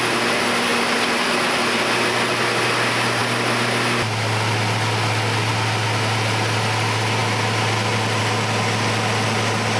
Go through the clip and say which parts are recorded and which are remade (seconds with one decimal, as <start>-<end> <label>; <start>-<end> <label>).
0.0-9.8 recorded